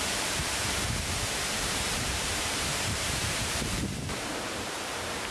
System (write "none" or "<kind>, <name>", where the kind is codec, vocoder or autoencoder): vocoder, BigVGAN v2